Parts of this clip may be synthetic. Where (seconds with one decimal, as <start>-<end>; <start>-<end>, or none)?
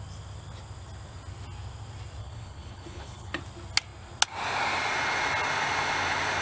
2.2-3.4